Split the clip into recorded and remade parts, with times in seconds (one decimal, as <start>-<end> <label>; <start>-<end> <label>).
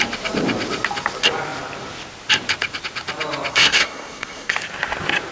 0.0-3.5 recorded; 3.5-4.5 remade; 4.5-5.3 recorded